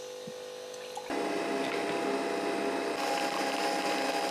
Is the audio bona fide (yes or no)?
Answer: yes